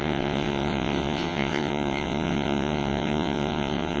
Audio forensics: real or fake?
fake